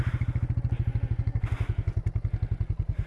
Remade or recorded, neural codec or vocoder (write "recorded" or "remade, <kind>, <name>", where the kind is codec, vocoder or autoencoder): recorded